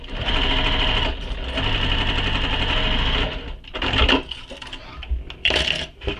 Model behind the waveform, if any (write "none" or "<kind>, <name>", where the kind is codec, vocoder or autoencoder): none